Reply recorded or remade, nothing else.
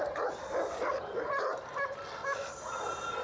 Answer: recorded